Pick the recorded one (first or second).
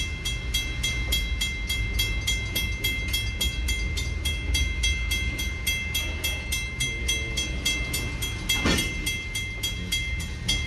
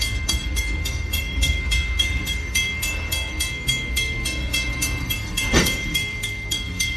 first